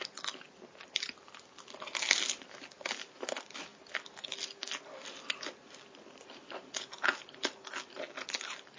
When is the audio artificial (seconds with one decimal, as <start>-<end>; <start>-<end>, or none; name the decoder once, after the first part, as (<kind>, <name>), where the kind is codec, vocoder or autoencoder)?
none